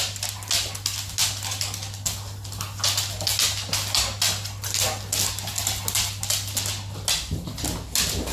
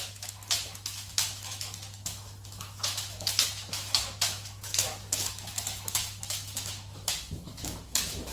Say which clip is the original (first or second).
first